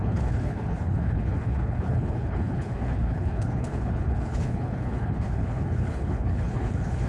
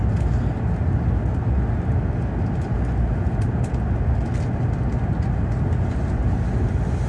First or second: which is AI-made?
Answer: first